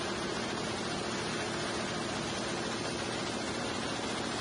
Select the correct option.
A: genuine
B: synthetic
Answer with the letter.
A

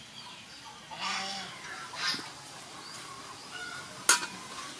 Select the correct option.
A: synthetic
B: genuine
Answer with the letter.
B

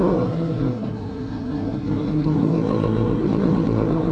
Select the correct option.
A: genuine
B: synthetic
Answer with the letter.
B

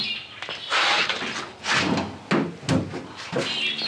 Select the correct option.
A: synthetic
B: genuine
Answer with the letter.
B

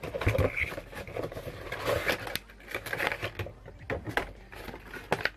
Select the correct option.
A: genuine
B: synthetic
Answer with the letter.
A